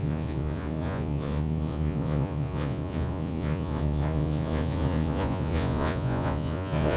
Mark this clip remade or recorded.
remade